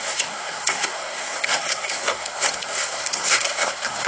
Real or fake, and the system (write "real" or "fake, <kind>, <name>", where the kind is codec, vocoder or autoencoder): fake, codec, SNAC